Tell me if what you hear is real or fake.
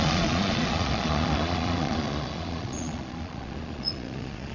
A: fake